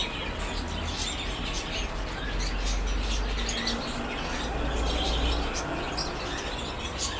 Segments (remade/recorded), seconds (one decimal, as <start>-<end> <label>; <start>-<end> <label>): 0.0-7.2 recorded